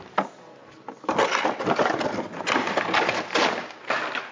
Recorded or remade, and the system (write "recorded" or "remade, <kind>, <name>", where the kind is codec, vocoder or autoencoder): recorded